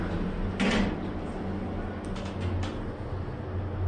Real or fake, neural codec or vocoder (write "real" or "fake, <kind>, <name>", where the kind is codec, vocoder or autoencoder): real